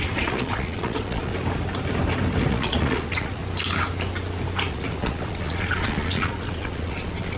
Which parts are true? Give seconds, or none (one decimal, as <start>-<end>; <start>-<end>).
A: 1.3-2.5; 3.4-4.7